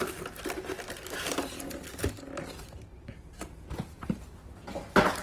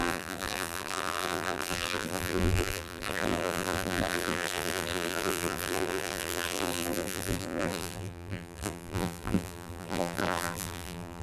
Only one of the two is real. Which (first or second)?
first